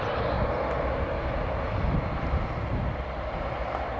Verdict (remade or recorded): recorded